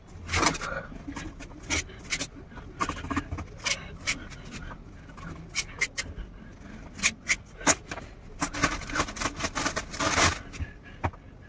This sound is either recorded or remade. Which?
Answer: recorded